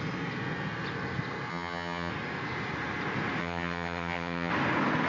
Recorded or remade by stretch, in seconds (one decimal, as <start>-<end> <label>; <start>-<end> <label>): 0.0-1.5 recorded; 1.5-2.1 remade; 2.1-3.4 recorded; 3.4-4.5 remade; 4.5-5.1 recorded